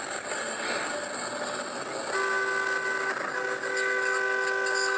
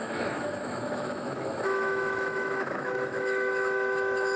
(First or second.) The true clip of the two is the first